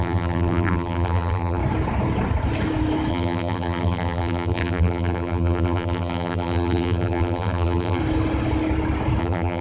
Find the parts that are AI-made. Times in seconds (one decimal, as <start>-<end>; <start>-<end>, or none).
0.0-1.6; 3.1-8.0; 9.2-9.6